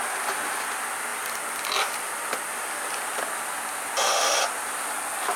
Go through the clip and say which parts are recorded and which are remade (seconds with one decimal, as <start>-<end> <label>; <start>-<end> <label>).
0.0-5.4 recorded